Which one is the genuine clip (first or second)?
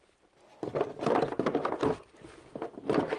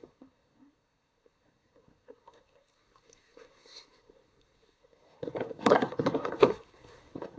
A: first